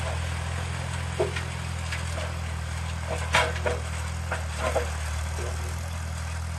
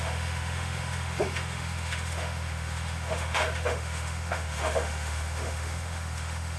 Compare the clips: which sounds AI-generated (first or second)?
second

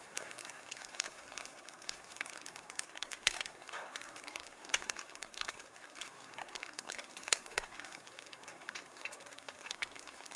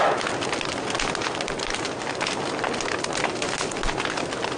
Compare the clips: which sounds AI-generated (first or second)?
first